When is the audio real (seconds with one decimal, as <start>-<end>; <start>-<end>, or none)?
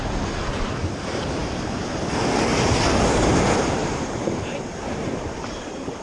0.0-3.8; 5.6-6.0